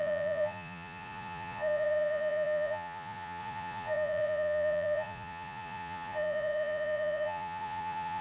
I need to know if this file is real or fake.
fake